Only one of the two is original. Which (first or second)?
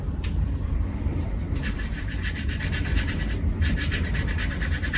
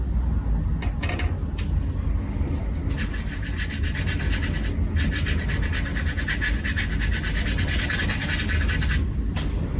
second